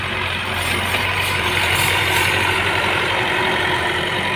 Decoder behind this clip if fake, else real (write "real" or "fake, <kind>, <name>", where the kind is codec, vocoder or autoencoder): fake, vocoder, BigVGAN v2